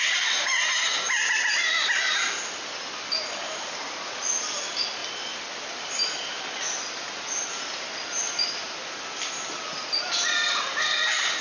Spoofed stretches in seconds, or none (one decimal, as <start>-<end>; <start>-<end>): none